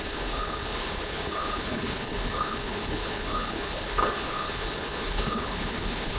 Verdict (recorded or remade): remade